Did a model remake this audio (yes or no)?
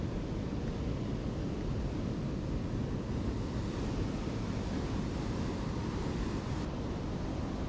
no